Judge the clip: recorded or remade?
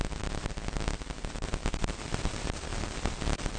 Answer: recorded